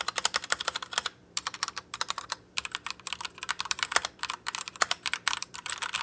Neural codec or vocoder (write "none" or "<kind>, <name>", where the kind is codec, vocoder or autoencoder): vocoder, BigVGAN v2